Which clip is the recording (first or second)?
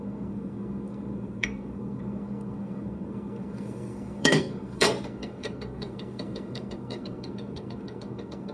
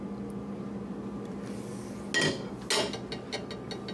second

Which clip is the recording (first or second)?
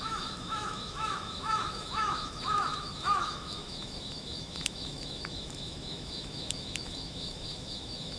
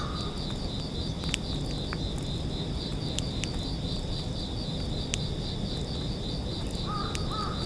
second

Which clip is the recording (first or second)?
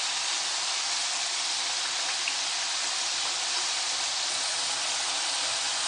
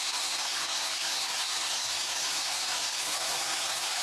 first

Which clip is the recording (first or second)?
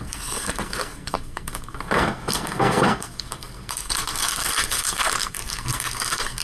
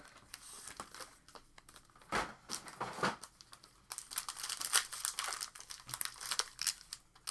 second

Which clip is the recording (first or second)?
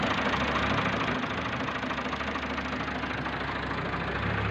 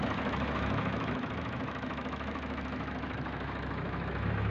first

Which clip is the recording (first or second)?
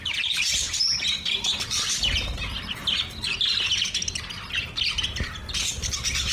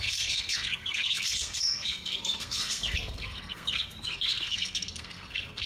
first